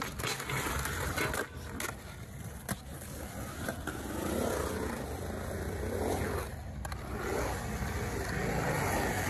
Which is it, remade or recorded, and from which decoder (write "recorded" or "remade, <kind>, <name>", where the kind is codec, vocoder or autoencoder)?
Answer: recorded